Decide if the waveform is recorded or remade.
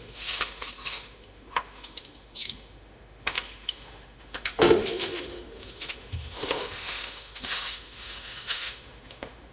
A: remade